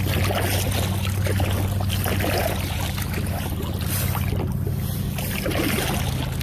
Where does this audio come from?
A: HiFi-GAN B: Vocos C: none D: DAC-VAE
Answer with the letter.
C